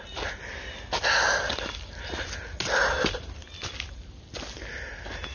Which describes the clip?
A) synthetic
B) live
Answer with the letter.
B